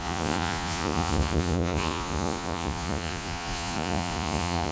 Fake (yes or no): yes